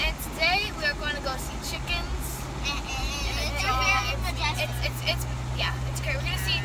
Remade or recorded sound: recorded